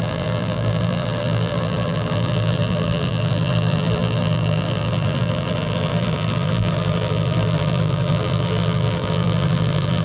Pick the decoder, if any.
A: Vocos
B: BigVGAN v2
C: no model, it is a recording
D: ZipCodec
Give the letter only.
B